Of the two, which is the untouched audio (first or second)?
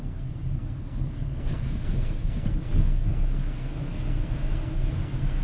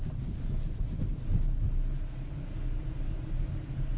second